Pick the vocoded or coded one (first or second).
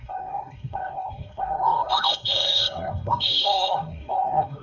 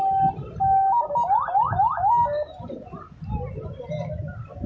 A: first